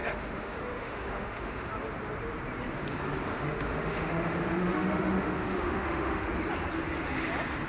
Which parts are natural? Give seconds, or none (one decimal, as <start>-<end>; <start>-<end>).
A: 1.7-3.3; 6.3-7.7

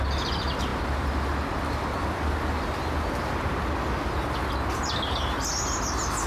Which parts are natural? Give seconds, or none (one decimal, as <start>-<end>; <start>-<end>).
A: 0.0-6.3

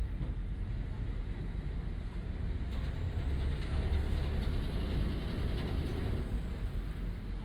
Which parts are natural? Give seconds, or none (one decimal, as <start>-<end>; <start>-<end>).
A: 0.0-7.4